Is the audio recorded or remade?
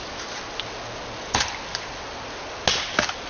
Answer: recorded